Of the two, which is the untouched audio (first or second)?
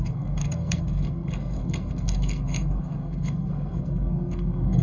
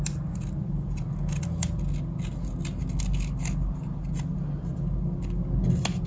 second